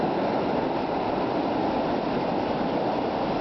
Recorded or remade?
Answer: recorded